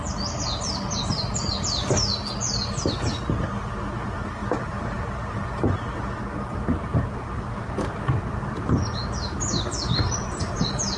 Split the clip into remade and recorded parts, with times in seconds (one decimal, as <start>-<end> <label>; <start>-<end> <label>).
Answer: 0.0-4.4 recorded; 4.4-5.0 remade; 5.0-6.9 recorded; 6.9-9.1 remade; 9.1-11.0 recorded